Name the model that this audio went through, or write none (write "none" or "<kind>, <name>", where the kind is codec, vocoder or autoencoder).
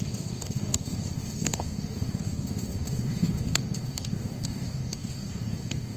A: codec, DAC